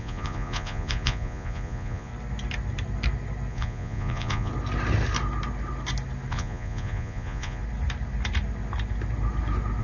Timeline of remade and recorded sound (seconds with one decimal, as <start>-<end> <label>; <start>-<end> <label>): 0.0-2.1 remade; 2.1-3.5 recorded; 3.5-4.5 remade; 4.5-6.3 recorded; 6.3-7.6 remade; 7.6-9.8 recorded